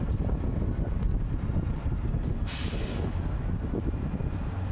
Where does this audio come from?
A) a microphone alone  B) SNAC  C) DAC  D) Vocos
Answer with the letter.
A